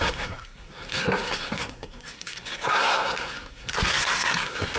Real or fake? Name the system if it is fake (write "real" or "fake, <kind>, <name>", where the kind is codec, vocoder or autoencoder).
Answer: fake, codec, SNAC